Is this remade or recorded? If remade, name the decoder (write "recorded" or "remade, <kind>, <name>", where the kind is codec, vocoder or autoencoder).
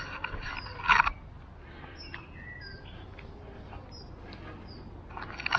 recorded